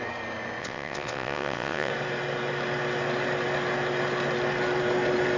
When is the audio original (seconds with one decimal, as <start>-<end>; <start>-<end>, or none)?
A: 0.0-0.6; 1.9-5.4

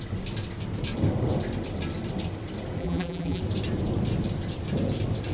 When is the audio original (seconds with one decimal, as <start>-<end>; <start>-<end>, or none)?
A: 0.0-2.8; 3.4-5.3

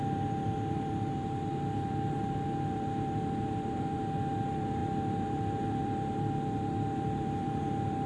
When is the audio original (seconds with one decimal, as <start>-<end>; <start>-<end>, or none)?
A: none

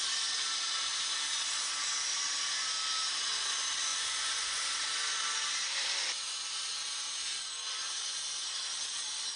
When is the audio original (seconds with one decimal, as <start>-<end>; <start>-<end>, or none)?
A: 0.0-3.9; 4.6-9.4

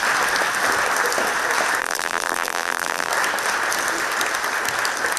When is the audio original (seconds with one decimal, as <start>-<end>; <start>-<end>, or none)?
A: 0.0-1.8; 3.1-5.2